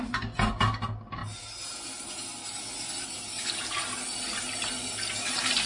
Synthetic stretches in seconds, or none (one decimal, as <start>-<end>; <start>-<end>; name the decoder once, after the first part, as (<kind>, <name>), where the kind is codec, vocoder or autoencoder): none